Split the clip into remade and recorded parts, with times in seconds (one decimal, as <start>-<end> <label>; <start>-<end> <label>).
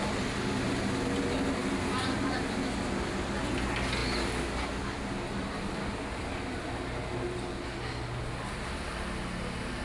0.0-9.8 recorded